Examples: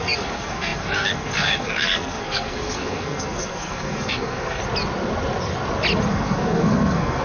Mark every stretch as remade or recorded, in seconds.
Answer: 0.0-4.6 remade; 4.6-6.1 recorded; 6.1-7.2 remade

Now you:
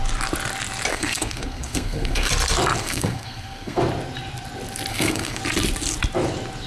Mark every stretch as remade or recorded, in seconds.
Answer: 0.0-0.9 recorded; 0.9-2.3 remade; 2.3-2.8 recorded; 2.8-3.8 remade; 3.8-4.9 recorded; 4.9-5.4 remade; 5.4-6.7 recorded

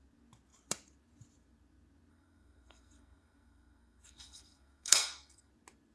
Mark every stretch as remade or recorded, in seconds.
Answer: 0.0-2.1 recorded; 2.1-5.5 remade; 5.5-5.9 recorded

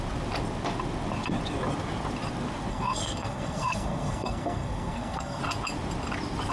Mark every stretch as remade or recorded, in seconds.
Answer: 0.0-2.7 recorded; 2.7-5.4 remade; 5.4-6.5 recorded

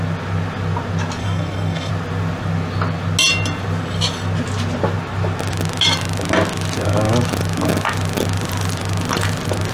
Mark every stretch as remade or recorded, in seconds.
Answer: 0.0-1.2 recorded; 1.2-1.9 remade; 1.9-9.7 recorded

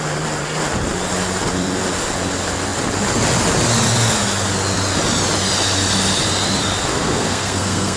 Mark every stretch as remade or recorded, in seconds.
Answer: 0.0-6.9 recorded; 6.9-8.0 remade

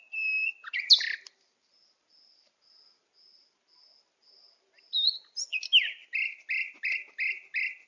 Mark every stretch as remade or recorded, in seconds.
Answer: 0.0-7.9 recorded